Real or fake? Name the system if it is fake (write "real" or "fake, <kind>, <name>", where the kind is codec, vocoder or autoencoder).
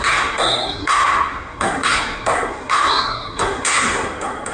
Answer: fake, codec, SNAC